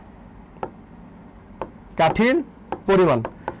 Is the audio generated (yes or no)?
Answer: no